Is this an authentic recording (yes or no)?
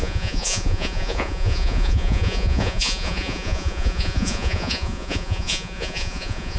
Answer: no